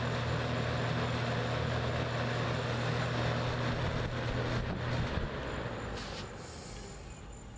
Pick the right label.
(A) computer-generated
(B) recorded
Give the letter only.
B